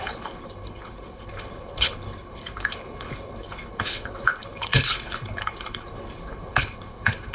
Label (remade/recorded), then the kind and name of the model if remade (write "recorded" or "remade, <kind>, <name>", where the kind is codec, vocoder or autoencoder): remade, codec, HILCodec